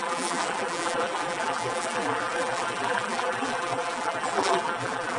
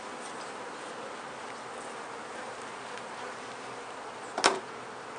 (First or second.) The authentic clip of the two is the second